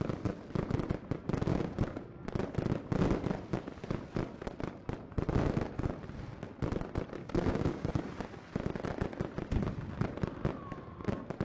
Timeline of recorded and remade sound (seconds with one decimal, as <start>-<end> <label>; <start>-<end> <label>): 0.0-1.5 recorded; 1.5-2.0 remade; 2.0-7.2 recorded; 7.2-7.9 remade; 7.9-11.4 recorded